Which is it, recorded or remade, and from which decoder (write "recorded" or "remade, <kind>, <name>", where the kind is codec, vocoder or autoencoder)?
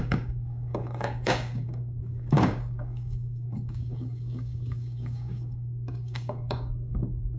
remade, codec, DAC